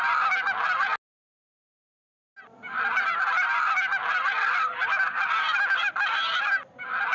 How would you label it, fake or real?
real